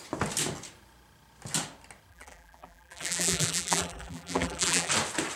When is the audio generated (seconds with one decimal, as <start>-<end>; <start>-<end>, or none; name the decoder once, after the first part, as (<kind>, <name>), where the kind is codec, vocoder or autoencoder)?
2.1-4.9 (vocoder, BigVGAN v2)

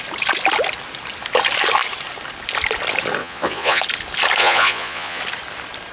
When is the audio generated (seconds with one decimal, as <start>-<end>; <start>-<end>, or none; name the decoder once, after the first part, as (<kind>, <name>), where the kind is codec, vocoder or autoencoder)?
3.2-3.8 (vocoder, Vocos); 4.4-5.2

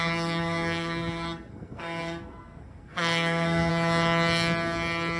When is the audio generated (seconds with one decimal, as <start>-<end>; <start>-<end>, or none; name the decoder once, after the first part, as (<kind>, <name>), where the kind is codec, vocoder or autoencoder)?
0.0-3.7 (codec, SNAC)

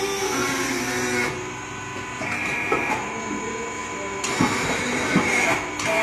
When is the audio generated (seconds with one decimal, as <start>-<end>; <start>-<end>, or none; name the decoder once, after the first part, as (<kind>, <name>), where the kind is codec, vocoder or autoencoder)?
none

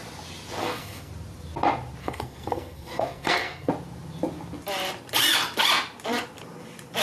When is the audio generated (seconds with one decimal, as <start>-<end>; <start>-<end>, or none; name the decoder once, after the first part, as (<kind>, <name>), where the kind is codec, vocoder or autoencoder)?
0.6-1.1 (codec, SNAC); 2.0-3.7

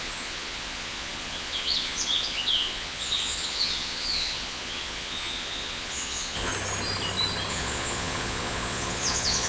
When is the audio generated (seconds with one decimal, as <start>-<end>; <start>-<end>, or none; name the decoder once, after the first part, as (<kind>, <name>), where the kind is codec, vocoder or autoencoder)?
0.0-6.5 (vocoder, Vocos); 7.5-9.5

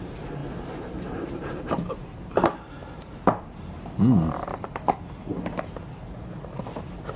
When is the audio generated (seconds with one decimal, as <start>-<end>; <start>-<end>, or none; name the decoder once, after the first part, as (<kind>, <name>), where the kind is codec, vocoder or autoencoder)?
0.0-7.2 (vocoder, BigVGAN v2)